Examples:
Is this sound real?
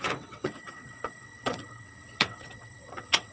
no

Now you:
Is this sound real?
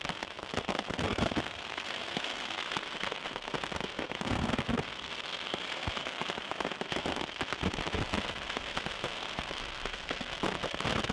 no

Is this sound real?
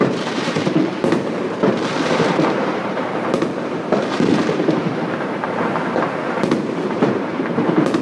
no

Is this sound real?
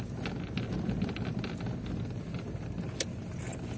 yes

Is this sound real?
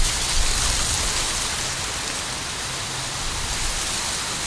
yes